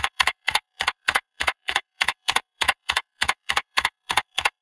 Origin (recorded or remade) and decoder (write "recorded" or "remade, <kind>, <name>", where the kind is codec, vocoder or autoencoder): remade, codec, SNAC